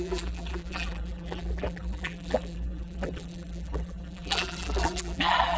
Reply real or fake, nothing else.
fake